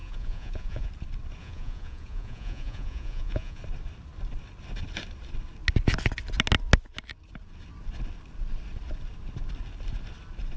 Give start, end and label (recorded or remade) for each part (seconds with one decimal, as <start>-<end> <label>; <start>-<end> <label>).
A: 0.0-0.9 remade; 0.9-1.4 recorded; 1.4-3.6 remade; 3.6-10.6 recorded